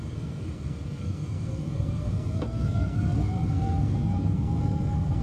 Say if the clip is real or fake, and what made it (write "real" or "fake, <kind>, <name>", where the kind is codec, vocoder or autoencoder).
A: fake, codec, SNAC